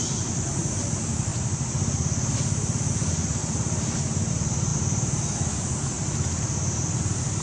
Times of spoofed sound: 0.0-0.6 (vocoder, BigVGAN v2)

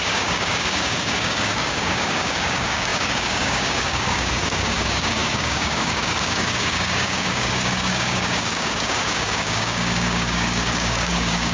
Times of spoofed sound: 0.0-11.5 (codec, DAC)

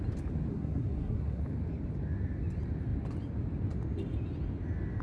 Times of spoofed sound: 0.5-1.4 (codec, SNAC)

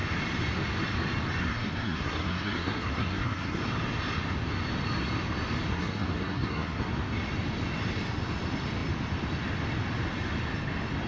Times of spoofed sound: 1.4-3.6 (codec, SNAC); 5.7-6.9

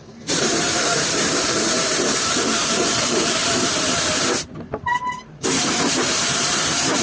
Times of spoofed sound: 0.0-3.4 (vocoder, BigVGAN v2); 4.3-7.0

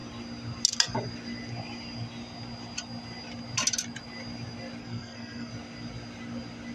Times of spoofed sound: 4.8-5.5 (codec, SNAC)

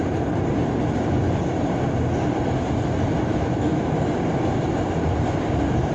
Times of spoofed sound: 3.3-4.0 (autoencoder, DAC-VAE)